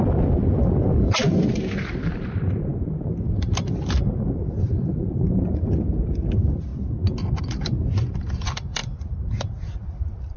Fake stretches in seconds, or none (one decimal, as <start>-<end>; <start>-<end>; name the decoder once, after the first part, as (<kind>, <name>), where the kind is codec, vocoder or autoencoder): 0.0-6.7 (vocoder, BigVGAN v2); 7.4-10.4